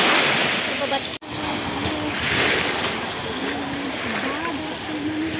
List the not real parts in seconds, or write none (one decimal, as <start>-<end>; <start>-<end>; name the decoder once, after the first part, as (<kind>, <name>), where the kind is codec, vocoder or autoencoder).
none